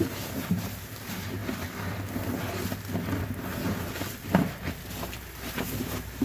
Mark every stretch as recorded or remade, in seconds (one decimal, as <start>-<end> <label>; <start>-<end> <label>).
0.0-1.4 remade; 1.4-5.1 recorded; 5.1-6.2 remade